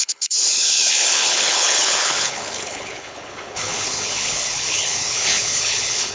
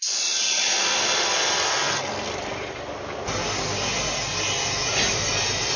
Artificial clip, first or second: first